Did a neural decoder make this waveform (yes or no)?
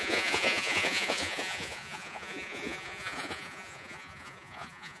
yes